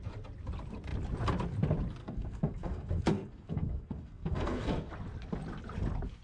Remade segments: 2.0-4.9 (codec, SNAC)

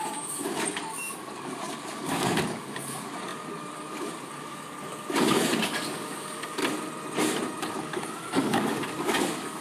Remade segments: 0.0-6.6 (codec, DAC); 7.7-9.6